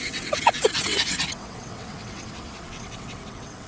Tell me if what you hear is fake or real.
fake